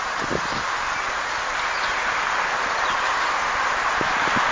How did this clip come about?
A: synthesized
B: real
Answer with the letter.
B